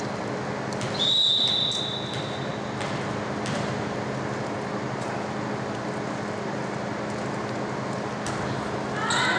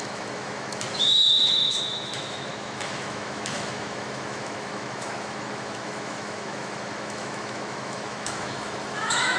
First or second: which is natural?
first